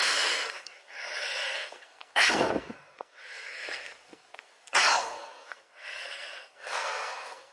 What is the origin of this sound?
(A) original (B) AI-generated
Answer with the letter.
B